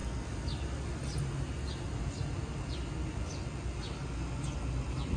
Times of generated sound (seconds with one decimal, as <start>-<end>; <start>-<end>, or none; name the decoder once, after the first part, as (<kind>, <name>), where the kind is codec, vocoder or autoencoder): none